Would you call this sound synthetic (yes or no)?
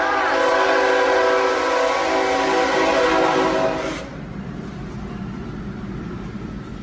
no